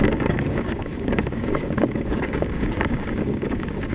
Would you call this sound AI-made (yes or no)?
yes